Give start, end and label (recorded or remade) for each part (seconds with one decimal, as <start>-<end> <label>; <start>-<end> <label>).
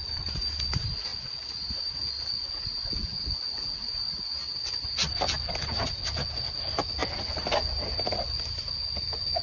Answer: 0.0-9.4 recorded